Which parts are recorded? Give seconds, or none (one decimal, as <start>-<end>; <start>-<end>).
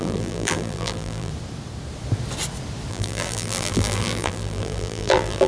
1.3-2.9